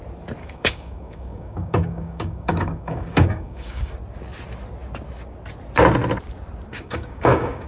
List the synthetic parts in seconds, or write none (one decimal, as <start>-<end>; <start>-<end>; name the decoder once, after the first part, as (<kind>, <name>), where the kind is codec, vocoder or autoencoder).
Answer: 0.4-3.9 (codec, DAC); 6.7-7.7